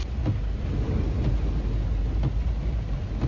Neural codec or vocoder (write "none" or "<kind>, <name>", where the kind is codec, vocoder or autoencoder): none